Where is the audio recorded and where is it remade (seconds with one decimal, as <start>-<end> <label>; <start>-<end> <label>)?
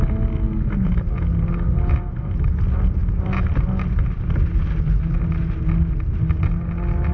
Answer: 0.0-7.1 recorded